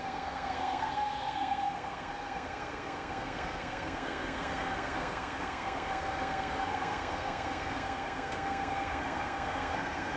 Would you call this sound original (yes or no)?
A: no